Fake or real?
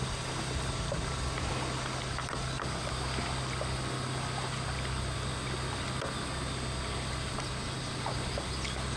real